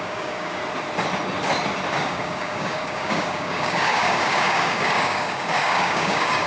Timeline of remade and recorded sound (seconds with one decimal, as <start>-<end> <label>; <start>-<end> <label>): 0.0-0.6 remade; 0.6-1.9 recorded; 1.9-6.5 remade